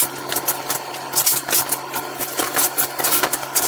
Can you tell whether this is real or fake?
real